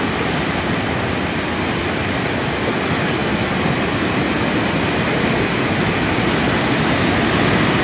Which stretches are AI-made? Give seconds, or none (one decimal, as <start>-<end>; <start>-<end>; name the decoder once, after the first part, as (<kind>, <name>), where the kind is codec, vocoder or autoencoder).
none